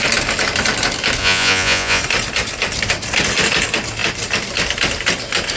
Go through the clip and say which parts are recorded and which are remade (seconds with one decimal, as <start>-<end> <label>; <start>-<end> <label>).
0.0-1.2 recorded; 1.2-2.0 remade; 2.0-5.6 recorded